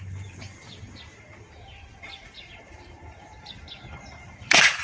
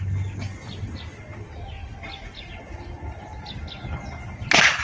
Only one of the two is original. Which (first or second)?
second